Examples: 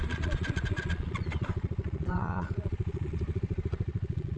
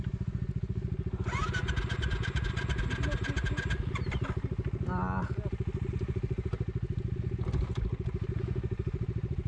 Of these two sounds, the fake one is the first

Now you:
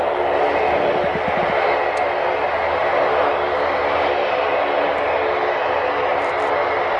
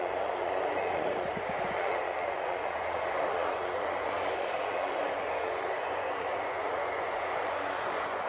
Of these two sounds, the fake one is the second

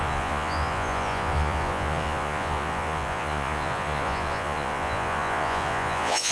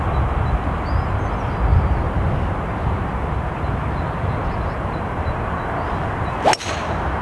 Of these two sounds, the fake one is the first